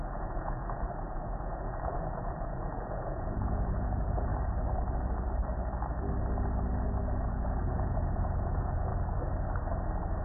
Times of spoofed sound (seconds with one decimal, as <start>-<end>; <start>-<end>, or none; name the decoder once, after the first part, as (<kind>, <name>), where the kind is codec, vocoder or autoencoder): 0.0-4.3 (vocoder, Vocos); 7.2-8.9

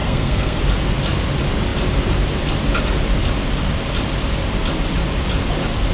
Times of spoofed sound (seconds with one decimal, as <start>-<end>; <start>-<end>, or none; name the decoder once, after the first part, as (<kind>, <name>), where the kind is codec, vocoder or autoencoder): 0.0-0.6 (codec, SNAC)

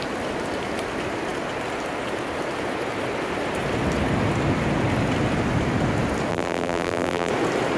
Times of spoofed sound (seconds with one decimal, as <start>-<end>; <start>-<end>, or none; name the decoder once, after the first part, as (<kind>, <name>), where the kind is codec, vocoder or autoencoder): 6.3-7.3 (vocoder, BigVGAN v2)

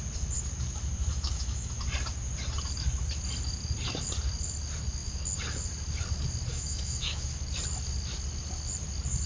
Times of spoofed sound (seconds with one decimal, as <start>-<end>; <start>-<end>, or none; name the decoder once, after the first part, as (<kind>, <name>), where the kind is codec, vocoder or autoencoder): 1.1-1.7 (autoencoder, DAC-VAE); 6.5-7.4